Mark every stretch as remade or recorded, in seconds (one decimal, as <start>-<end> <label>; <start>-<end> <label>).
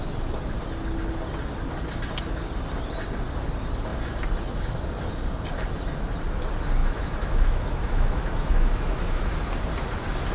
0.0-6.8 recorded; 6.8-9.3 remade; 9.3-10.3 recorded